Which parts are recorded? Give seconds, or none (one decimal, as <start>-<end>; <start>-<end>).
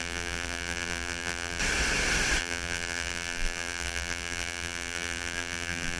1.6-2.4